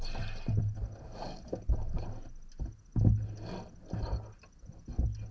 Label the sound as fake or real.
real